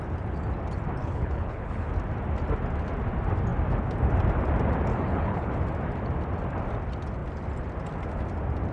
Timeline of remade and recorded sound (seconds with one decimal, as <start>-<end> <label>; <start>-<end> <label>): 0.0-1.0 recorded; 1.0-1.9 remade; 1.9-4.9 recorded; 4.9-5.5 remade; 5.5-8.7 recorded